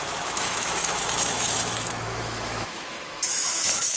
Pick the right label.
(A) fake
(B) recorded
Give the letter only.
A